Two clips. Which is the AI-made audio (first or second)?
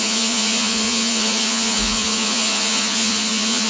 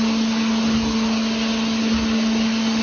first